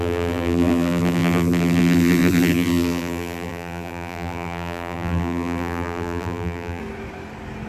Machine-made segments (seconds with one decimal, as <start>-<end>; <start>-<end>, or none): 0.0-6.8